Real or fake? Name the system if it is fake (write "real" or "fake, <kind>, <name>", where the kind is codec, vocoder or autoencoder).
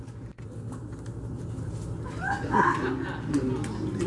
real